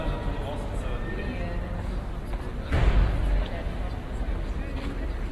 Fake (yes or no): no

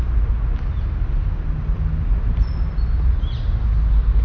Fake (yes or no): no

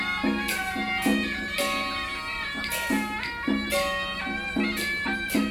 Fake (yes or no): no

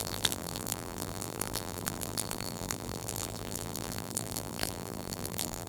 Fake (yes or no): yes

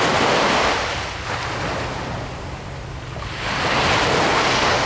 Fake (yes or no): no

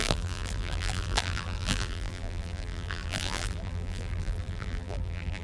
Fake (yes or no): yes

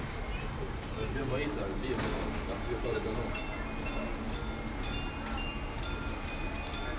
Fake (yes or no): no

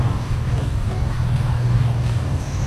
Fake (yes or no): yes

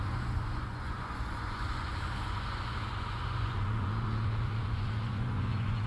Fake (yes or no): yes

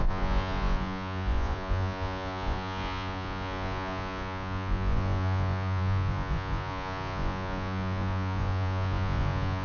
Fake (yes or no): yes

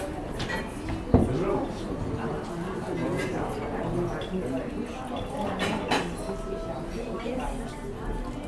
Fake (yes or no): no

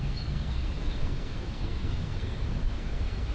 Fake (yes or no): yes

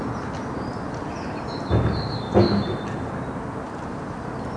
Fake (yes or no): no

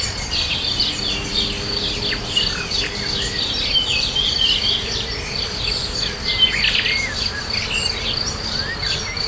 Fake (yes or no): no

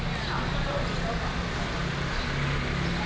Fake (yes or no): no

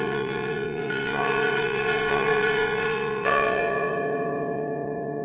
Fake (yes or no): yes